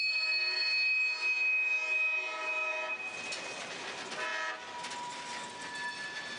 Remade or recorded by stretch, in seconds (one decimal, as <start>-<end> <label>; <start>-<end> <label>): 0.0-6.4 recorded